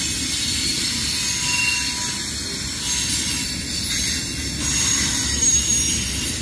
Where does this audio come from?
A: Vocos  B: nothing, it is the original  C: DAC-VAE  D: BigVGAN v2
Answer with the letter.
B